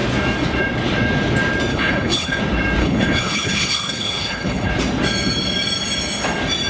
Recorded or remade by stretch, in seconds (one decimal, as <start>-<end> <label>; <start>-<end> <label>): 0.0-1.7 recorded; 1.7-2.4 remade; 2.4-2.8 recorded; 2.8-4.7 remade; 4.7-6.7 recorded